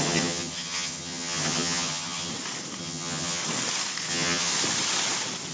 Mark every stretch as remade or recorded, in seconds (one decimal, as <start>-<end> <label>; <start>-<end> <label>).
0.0-2.3 remade; 2.3-2.8 recorded; 2.8-3.4 remade; 3.4-4.1 recorded; 4.1-4.5 remade; 4.5-5.5 recorded